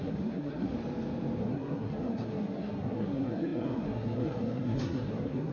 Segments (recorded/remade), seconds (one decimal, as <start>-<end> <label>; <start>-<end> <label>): 0.0-0.7 remade; 0.7-1.4 recorded; 1.4-5.5 remade